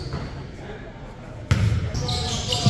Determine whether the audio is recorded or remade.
recorded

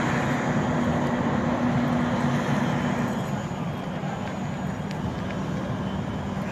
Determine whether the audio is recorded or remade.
recorded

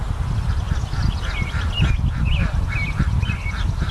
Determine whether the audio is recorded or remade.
recorded